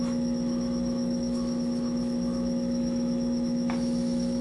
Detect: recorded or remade remade